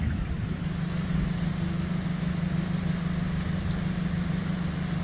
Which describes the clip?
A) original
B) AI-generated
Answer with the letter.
A